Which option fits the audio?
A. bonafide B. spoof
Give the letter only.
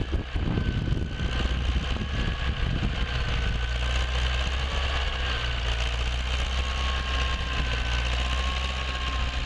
A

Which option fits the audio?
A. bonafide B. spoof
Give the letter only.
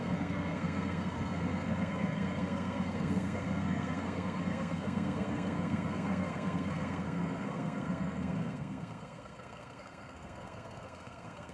B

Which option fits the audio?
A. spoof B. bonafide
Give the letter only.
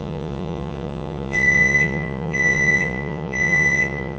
A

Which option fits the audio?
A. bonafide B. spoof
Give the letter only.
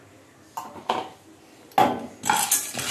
A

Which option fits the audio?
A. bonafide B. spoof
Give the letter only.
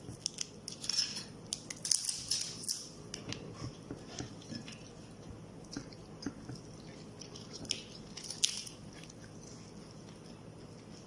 A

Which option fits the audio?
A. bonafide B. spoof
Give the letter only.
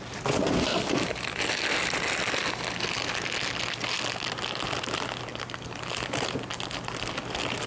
A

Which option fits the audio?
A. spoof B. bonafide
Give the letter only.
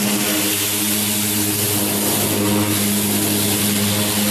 B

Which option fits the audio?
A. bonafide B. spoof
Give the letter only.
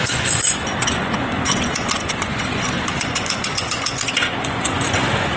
B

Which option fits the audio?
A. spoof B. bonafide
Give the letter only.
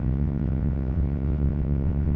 A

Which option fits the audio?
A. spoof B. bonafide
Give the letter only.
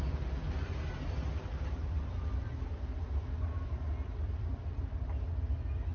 B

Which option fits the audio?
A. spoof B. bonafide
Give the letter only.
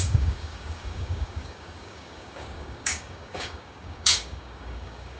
A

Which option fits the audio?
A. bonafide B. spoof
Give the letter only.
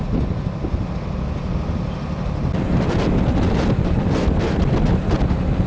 A